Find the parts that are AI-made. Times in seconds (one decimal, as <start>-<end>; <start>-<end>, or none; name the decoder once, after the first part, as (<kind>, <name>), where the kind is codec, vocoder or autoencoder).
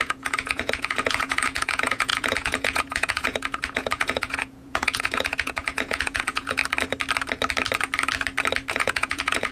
0.0-6.6 (vocoder, Vocos); 8.7-9.5